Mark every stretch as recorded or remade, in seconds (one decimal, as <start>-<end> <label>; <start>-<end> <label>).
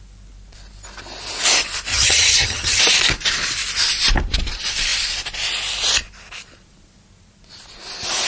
0.0-1.9 recorded; 1.9-2.8 remade; 2.8-8.3 recorded